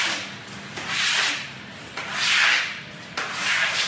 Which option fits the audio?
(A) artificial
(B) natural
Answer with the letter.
B